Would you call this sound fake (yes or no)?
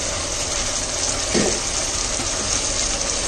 no